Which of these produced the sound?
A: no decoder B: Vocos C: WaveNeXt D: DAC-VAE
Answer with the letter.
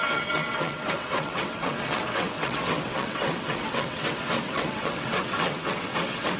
C